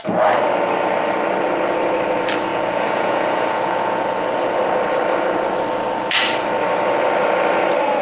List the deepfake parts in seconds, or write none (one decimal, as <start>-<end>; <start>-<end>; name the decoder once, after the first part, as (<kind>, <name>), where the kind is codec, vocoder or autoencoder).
2.5-4.1 (vocoder, Vocos)